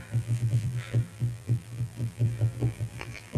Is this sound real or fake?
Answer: fake